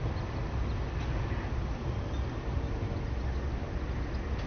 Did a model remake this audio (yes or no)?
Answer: no